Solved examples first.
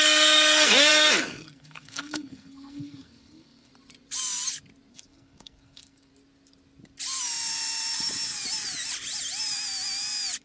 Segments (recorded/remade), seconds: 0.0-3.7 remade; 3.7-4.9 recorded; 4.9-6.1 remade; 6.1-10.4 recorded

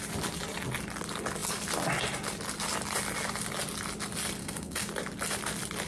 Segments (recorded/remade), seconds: 0.0-4.4 recorded; 4.4-4.9 remade; 4.9-5.9 recorded

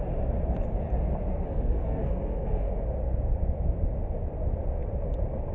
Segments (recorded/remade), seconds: 0.0-1.3 recorded; 1.3-2.7 remade; 2.7-5.5 recorded